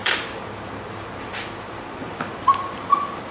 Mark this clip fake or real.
real